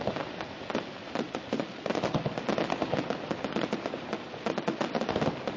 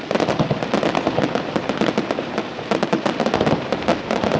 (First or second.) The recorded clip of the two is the first